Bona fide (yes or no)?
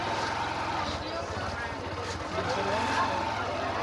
yes